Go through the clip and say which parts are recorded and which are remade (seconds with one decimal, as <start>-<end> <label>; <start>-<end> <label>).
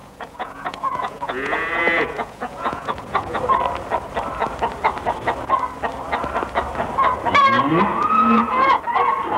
0.0-3.4 remade; 3.4-7.9 recorded; 7.9-8.8 remade; 8.8-9.4 recorded